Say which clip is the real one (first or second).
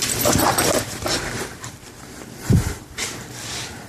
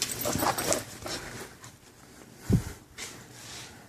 second